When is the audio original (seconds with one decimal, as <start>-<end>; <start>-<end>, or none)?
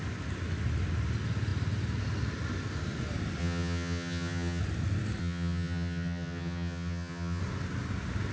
0.0-3.4; 4.6-5.2; 7.4-8.3